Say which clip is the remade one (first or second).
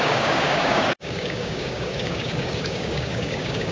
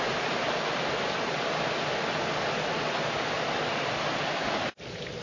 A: first